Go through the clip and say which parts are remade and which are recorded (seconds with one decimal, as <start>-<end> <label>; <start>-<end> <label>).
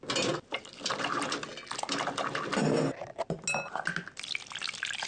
0.0-5.1 recorded